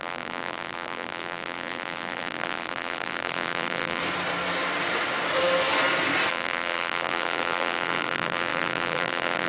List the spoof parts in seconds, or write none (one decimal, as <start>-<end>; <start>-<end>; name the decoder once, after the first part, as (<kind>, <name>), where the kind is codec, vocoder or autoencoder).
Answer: 0.0-4.0 (vocoder, BigVGAN v2); 6.3-9.5